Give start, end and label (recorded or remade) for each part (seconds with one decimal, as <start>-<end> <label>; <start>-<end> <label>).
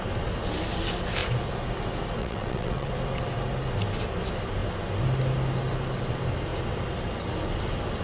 0.0-2.2 recorded; 2.2-2.9 remade; 2.9-8.0 recorded